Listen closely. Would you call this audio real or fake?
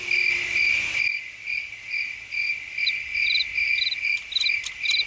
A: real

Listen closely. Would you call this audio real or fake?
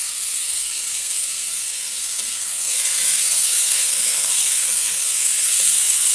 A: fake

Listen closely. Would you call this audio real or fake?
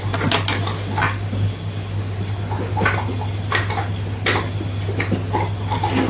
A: real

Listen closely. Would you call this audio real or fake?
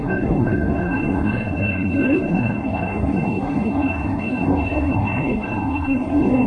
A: fake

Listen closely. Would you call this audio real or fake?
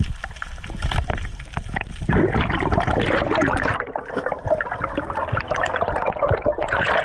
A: real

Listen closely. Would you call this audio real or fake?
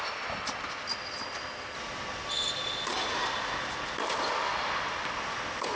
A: real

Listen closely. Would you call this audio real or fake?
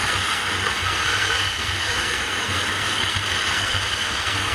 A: fake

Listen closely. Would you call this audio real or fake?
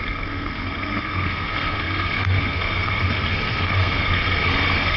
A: fake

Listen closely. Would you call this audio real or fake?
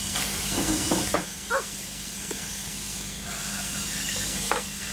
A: fake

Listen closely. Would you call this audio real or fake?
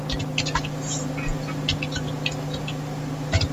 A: real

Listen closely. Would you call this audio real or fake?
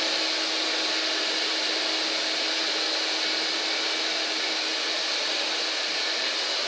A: real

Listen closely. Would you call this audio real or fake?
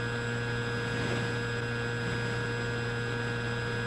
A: real